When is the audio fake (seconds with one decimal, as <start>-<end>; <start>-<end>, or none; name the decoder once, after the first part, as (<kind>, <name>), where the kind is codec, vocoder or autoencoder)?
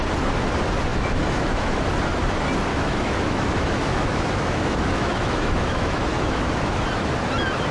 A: 0.9-1.8 (autoencoder, DAC-VAE); 2.7-6.8